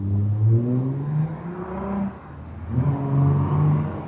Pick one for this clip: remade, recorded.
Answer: recorded